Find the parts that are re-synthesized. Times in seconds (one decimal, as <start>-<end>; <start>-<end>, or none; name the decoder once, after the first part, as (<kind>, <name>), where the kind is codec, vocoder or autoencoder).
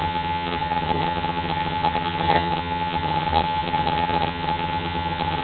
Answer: 0.0-5.4 (vocoder, HiFi-GAN)